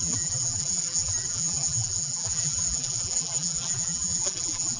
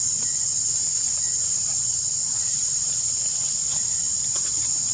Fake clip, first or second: first